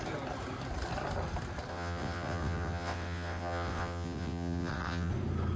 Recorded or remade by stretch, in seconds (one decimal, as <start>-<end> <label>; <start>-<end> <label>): 0.0-1.7 recorded; 1.7-5.1 remade; 5.1-5.6 recorded